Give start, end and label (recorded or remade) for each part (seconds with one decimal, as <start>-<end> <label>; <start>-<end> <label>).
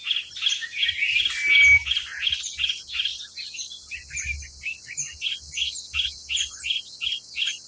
0.0-7.7 recorded